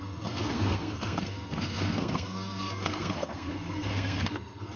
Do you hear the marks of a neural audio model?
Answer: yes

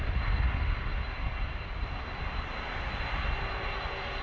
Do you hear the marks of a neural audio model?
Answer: no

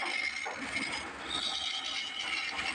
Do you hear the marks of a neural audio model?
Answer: no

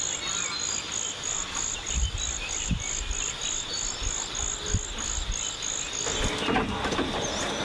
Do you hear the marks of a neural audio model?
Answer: no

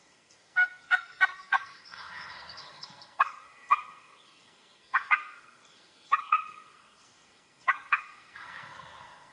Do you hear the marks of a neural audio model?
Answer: yes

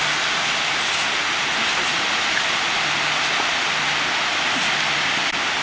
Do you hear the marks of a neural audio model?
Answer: no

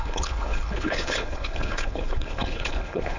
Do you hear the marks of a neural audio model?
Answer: yes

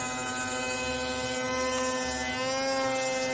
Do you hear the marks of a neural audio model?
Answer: no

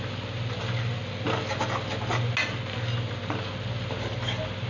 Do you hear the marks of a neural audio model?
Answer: no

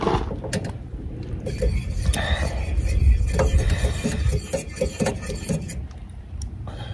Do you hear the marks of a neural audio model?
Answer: no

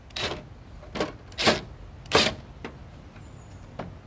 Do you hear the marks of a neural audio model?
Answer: no